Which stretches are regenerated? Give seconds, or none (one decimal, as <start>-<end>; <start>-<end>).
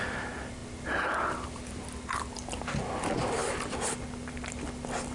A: none